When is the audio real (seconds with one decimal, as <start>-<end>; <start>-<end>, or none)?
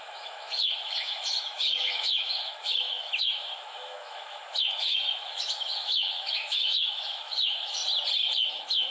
7.8-8.5